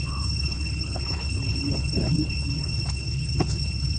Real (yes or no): no